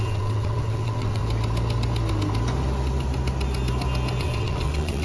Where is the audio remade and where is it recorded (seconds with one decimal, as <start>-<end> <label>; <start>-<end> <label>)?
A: 0.0-1.2 remade; 1.2-4.2 recorded; 4.2-5.0 remade